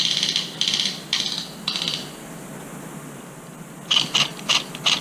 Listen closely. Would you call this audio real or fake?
real